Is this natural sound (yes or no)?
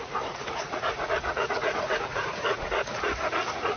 no